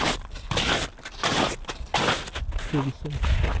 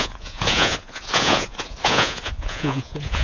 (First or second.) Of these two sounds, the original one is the first